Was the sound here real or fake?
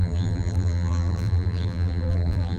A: fake